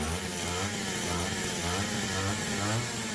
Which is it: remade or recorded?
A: recorded